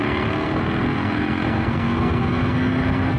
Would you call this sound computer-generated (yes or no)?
yes